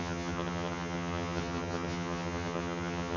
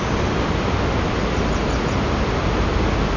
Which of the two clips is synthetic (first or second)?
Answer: first